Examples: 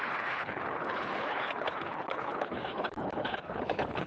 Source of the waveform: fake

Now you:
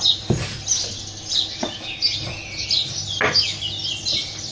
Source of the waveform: real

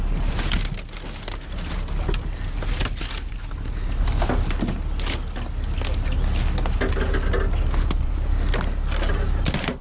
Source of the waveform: real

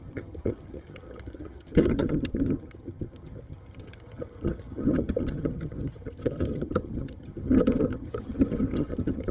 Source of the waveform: fake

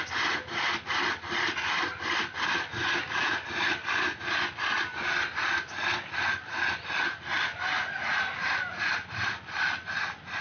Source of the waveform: real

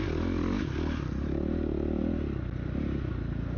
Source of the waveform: real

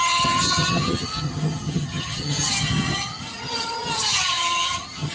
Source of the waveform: fake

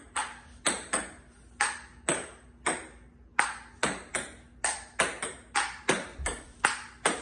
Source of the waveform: real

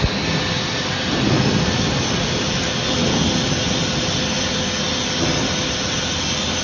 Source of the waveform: real